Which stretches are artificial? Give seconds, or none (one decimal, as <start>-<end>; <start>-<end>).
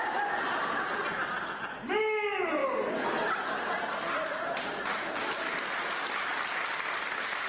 6.3-7.1